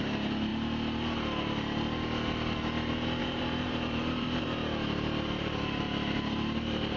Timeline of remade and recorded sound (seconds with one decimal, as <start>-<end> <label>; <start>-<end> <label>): 0.0-0.5 remade; 0.5-3.2 recorded; 3.2-4.6 remade; 4.6-5.4 recorded; 5.4-7.0 remade